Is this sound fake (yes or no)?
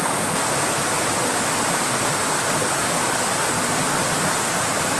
no